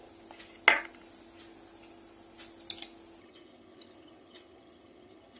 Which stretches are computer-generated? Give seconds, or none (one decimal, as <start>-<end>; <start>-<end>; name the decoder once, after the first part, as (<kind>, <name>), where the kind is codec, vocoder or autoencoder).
3.2-5.4 (vocoder, HiFi-GAN)